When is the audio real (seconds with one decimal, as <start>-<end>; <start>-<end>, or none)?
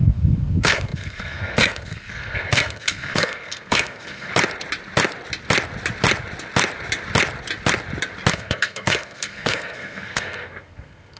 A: 4.3-8.3